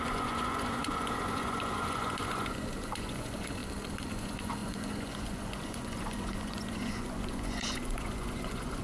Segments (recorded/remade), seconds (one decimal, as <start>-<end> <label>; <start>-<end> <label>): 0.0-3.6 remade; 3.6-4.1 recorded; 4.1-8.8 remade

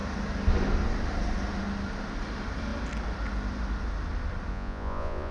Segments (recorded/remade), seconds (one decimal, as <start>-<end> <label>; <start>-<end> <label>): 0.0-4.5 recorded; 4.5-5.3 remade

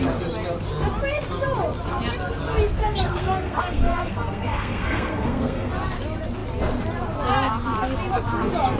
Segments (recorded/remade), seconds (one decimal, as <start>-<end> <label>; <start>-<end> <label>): 0.0-2.8 recorded; 2.8-5.7 remade; 5.7-8.8 recorded

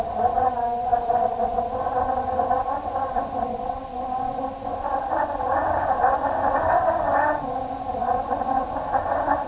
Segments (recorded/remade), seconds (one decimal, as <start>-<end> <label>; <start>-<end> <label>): 0.0-9.5 recorded

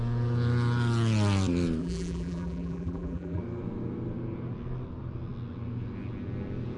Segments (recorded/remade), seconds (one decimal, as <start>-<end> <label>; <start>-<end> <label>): 0.0-1.8 recorded; 1.8-3.4 remade; 3.4-6.8 recorded

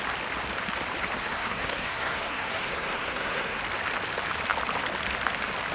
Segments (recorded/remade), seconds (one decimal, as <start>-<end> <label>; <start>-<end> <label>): 0.0-1.2 recorded; 1.2-3.6 remade; 3.6-5.7 recorded

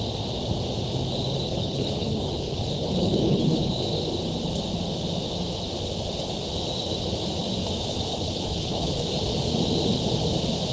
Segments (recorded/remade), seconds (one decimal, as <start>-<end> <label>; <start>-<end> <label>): 0.0-1.5 recorded; 1.5-3.8 remade; 3.8-8.1 recorded; 8.1-9.1 remade; 9.1-10.7 recorded

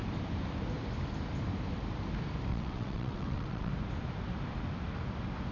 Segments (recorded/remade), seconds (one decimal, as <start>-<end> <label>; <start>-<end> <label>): 0.0-2.5 recorded; 2.5-3.7 remade; 3.7-5.5 recorded